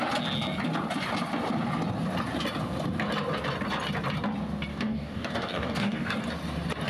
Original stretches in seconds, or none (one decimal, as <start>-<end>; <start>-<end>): 0.0-4.7; 6.2-6.9